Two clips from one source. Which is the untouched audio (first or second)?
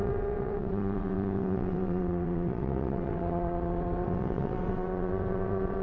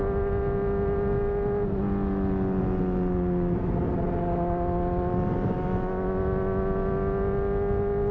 second